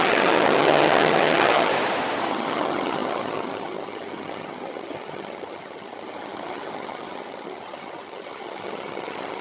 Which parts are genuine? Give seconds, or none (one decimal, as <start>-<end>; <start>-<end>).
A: 1.7-2.3

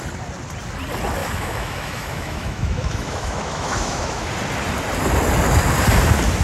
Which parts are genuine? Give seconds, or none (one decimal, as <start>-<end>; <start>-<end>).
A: 0.0-1.2; 4.2-6.4